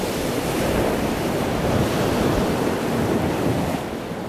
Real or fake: real